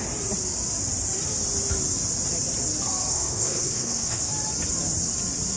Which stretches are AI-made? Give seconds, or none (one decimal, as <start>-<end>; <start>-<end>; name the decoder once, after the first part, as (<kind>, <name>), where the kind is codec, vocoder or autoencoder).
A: 3.1-4.3 (codec, SNAC)